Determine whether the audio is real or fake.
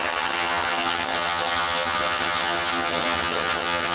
fake